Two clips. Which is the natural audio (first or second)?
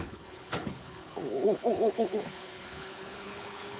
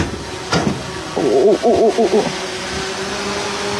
second